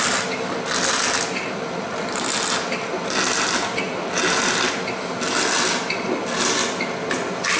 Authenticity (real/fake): real